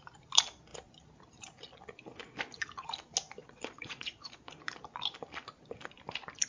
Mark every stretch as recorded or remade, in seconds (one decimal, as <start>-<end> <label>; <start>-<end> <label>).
0.0-3.4 recorded; 3.4-4.5 remade; 4.5-6.5 recorded